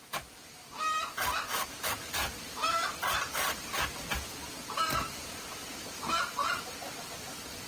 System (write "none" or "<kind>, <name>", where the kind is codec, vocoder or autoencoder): none